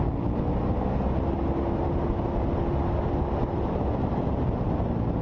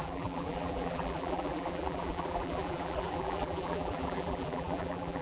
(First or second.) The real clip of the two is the first